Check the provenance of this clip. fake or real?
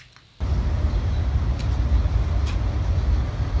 real